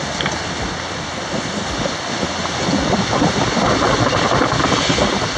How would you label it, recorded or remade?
recorded